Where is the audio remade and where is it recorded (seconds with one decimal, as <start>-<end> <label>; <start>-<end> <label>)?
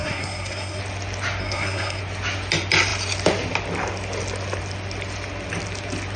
0.0-0.8 remade; 0.8-1.4 recorded; 1.4-2.0 remade; 2.0-6.2 recorded